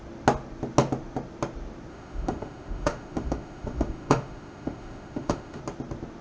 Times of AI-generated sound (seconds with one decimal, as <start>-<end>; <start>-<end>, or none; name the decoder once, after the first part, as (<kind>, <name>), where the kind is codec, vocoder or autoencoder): 1.9-5.6 (autoencoder, DAC-VAE)